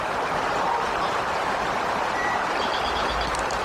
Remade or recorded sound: remade